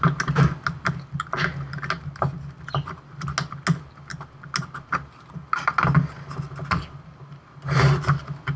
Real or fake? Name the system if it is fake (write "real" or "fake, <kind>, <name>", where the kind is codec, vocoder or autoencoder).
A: real